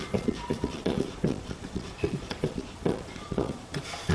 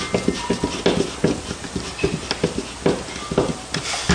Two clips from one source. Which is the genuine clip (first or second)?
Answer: second